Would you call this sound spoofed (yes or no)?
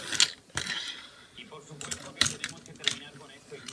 no